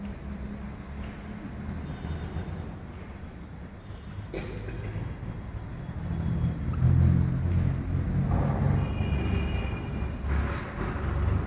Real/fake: real